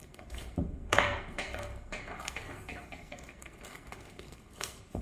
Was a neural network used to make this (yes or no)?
yes